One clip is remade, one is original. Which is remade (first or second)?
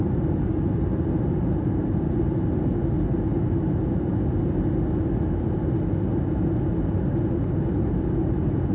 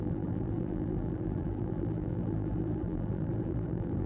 second